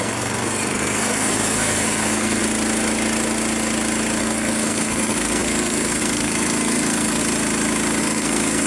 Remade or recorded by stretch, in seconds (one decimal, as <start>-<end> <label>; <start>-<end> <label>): 0.0-2.4 remade; 2.4-4.2 recorded; 4.2-7.2 remade; 7.2-8.0 recorded; 8.0-8.7 remade